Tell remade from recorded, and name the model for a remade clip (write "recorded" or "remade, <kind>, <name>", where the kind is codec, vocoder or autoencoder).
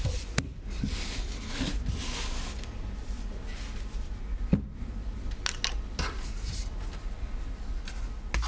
recorded